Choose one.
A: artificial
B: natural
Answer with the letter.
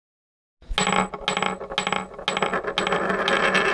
B